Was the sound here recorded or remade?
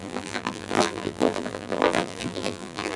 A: remade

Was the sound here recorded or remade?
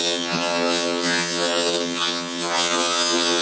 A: remade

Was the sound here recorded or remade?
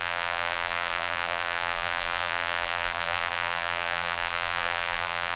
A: remade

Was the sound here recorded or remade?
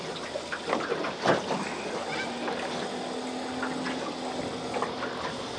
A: recorded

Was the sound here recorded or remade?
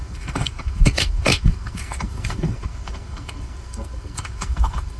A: remade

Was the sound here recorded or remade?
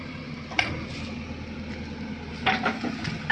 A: recorded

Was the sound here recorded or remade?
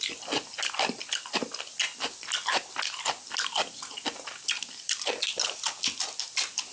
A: recorded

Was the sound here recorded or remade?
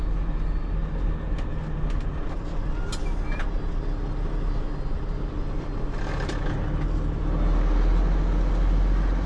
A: recorded